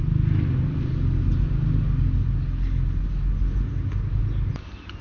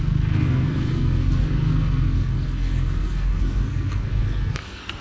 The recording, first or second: first